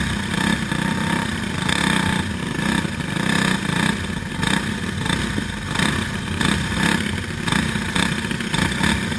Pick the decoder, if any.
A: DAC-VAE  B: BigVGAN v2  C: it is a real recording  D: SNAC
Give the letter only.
C